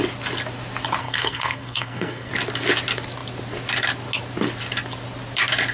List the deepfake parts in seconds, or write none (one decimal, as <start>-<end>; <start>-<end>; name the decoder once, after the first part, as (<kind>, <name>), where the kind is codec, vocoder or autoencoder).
1.0-2.3 (codec, SNAC)

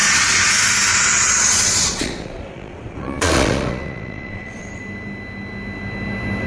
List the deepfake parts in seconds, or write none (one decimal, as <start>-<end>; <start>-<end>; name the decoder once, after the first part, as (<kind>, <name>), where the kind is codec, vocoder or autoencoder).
0.0-0.5 (vocoder, Vocos); 0.9-4.8